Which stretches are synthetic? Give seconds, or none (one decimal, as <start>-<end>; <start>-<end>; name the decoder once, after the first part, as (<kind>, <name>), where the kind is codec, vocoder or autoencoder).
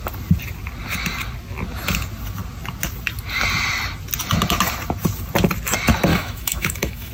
6.1-7.1 (autoencoder, DAC-VAE)